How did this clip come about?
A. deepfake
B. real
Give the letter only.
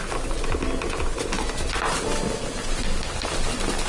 B